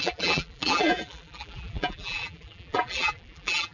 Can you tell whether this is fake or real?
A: fake